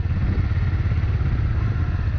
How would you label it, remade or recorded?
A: recorded